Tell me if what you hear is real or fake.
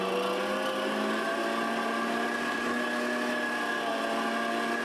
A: real